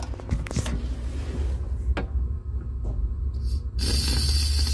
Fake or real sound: real